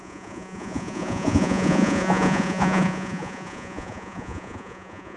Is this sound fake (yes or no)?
yes